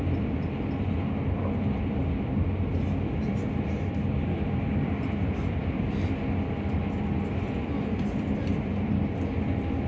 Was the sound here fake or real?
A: real